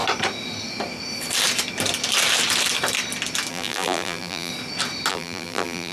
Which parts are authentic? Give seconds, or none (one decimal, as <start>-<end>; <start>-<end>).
0.0-3.5; 4.5-5.1